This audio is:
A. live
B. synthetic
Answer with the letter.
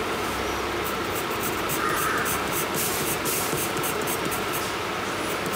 B